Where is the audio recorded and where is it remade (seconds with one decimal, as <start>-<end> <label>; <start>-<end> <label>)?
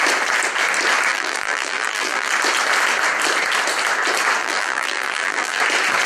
0.0-1.1 recorded; 1.1-2.3 remade; 2.3-4.4 recorded; 4.4-5.6 remade; 5.6-6.1 recorded